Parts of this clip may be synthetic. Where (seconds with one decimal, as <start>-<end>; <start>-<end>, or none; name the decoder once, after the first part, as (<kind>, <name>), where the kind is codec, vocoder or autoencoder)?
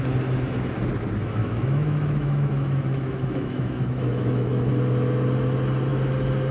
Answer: 1.4-4.7 (autoencoder, DAC-VAE)